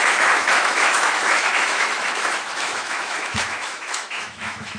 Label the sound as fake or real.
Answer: fake